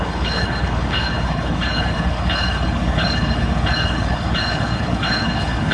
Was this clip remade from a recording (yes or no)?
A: yes